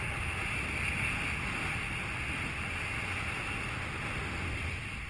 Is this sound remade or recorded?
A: recorded